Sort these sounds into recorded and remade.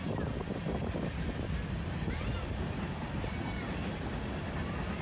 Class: recorded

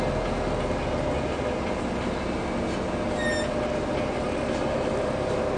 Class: recorded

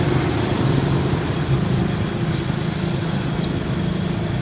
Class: recorded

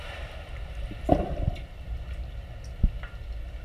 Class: recorded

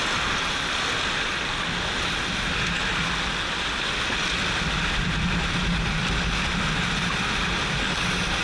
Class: recorded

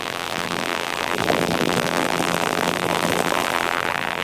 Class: remade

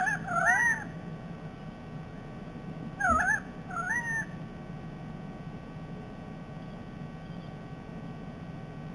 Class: recorded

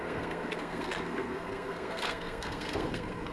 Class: remade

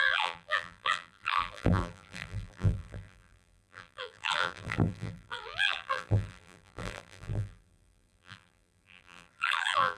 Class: remade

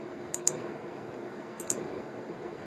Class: remade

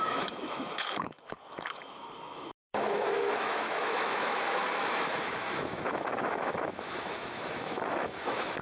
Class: remade